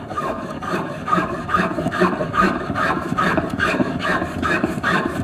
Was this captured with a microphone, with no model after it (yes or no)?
no